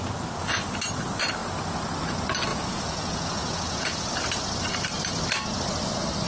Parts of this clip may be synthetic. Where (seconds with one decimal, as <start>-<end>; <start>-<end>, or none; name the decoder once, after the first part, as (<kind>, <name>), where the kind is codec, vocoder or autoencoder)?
2.5-4.1 (vocoder, Vocos)